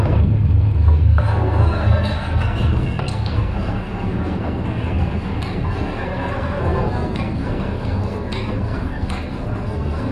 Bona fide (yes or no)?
no